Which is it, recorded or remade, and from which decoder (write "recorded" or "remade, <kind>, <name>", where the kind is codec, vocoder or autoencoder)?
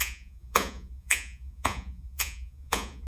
remade, vocoder, Vocos